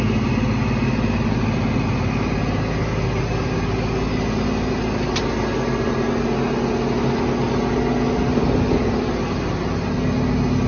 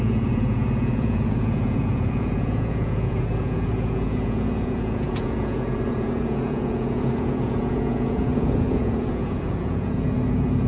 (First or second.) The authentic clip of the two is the first